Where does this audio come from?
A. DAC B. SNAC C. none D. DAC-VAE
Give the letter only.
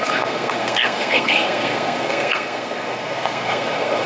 B